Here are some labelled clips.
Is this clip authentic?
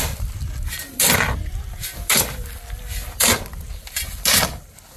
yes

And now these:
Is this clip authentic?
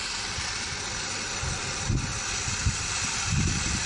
no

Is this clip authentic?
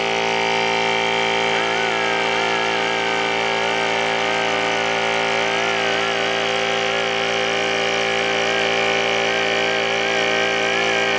yes